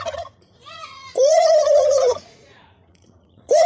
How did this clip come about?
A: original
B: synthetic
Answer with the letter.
B